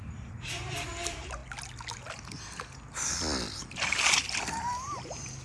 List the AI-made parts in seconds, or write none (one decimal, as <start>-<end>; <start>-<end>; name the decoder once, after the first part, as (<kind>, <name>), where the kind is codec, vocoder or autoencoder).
0.0-1.4 (vocoder, BigVGAN v2); 4.6-5.4